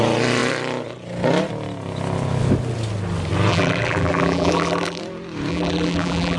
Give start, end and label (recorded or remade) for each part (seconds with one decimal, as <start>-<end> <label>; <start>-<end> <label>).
0.0-3.5 recorded; 3.5-5.0 remade; 5.0-5.5 recorded; 5.5-6.4 remade